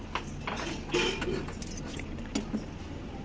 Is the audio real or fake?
real